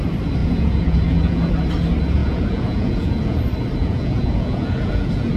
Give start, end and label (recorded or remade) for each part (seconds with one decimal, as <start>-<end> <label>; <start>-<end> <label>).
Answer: 0.0-0.4 recorded; 0.4-1.5 remade; 1.5-2.2 recorded; 2.2-3.4 remade; 3.4-3.8 recorded; 3.8-5.4 remade